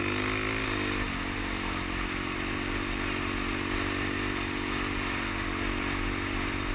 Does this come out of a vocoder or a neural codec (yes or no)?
no